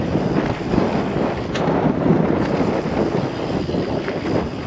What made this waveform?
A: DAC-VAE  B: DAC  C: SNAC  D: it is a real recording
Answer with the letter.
D